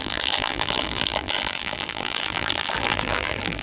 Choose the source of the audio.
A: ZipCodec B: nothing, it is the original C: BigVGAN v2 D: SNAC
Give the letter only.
C